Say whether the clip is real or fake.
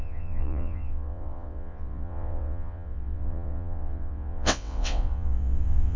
fake